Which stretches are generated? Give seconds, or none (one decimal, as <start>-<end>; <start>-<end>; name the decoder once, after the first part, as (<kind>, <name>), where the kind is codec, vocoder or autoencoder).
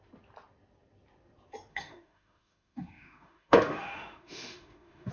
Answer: 1.7-5.1 (autoencoder, DAC-VAE)